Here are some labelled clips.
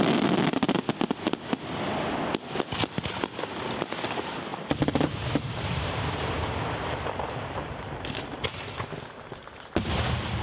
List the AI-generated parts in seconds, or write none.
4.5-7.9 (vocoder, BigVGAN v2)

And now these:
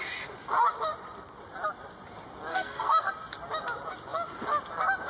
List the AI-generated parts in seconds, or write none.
2.5-3.1 (codec, SNAC)

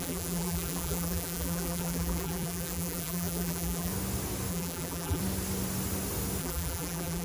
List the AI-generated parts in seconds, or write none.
0.0-3.9 (vocoder, BigVGAN v2); 4.5-5.2; 6.4-7.2

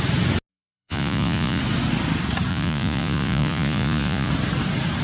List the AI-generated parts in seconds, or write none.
0.5-1.6 (vocoder, Vocos); 2.5-4.3

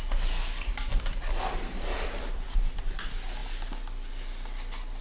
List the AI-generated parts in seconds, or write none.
0.9-3.0 (vocoder, BigVGAN v2)

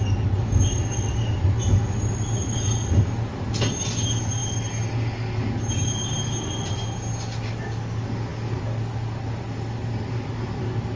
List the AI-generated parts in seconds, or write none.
none

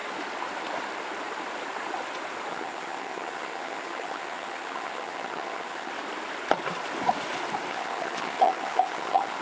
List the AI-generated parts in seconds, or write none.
2.5-5.9 (vocoder, HiFi-GAN); 7.7-9.4